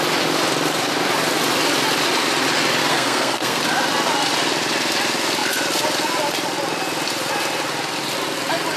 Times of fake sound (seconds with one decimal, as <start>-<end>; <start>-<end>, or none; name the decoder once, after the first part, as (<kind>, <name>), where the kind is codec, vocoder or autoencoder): 2.9-3.6 (codec, SNAC)